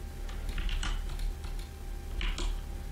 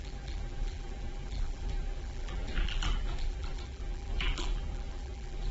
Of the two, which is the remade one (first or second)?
second